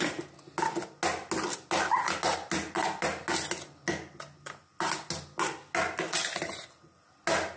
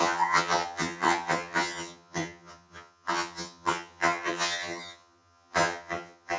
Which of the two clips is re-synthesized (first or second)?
second